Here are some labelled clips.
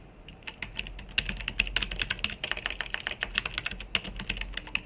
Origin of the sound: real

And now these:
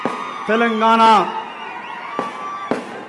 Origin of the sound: real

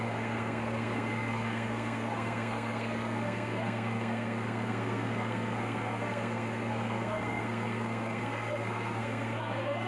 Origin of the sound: fake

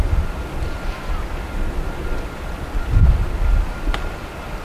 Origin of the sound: fake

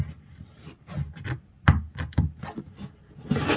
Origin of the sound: real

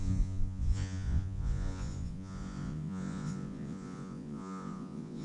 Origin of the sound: fake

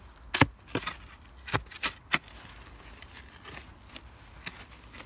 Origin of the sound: real